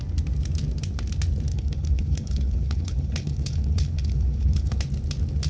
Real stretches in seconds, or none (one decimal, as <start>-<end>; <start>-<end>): 0.0-1.5; 4.8-5.5